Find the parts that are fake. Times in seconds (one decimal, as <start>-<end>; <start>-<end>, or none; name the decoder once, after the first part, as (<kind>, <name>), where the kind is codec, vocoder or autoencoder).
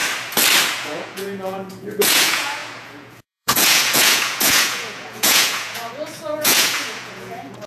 0.7-7.7 (vocoder, Vocos)